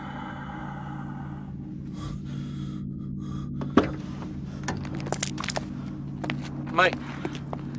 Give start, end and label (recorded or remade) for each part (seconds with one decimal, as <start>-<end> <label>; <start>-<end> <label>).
0.0-7.8 recorded

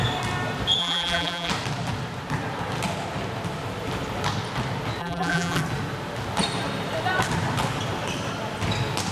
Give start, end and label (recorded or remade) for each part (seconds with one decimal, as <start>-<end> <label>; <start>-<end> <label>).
0.0-0.8 recorded; 0.8-1.5 remade; 1.5-5.0 recorded; 5.0-5.6 remade; 5.6-9.1 recorded

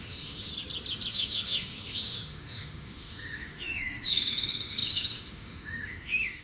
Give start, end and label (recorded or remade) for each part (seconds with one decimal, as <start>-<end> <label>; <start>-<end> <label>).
0.0-0.5 remade; 0.5-1.1 recorded; 1.1-6.4 remade

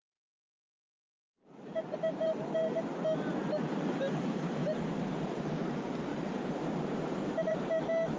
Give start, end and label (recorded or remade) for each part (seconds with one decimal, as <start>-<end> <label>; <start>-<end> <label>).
0.0-2.9 remade; 2.9-4.1 recorded; 4.1-4.6 remade; 4.6-5.1 recorded; 5.1-8.2 remade